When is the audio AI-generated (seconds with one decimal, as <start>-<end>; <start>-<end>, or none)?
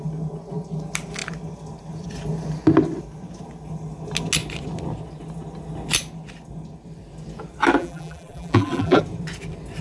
7.8-9.0